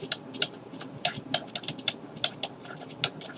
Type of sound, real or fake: real